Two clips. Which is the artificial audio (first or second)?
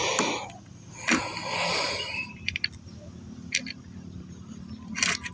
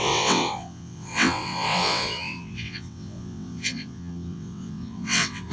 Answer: second